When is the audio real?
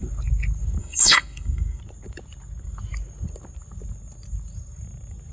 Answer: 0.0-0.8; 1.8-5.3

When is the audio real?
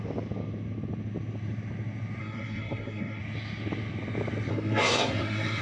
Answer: 0.0-2.2; 3.2-4.5